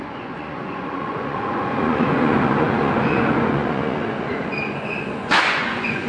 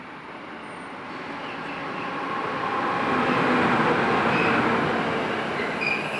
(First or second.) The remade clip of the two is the first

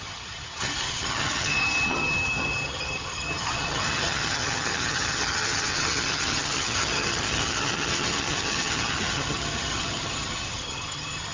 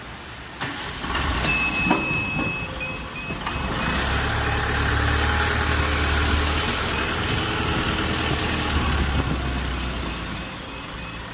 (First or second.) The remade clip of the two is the first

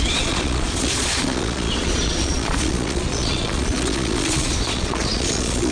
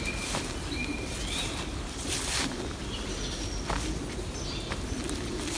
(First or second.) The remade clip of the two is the first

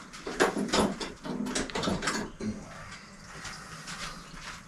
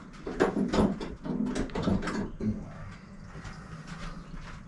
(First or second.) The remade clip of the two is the first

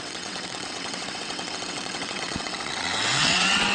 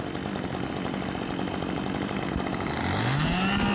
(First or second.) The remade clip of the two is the first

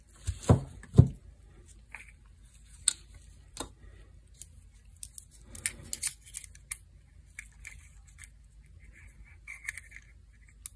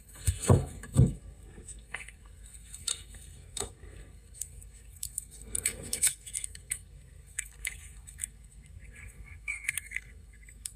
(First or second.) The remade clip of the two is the second